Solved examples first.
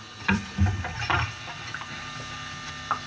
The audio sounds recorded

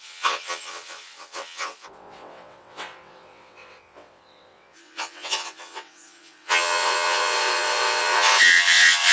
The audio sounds remade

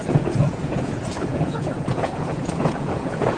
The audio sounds remade